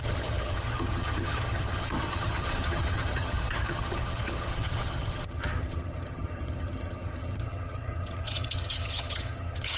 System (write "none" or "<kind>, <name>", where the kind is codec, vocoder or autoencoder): vocoder, HiFi-GAN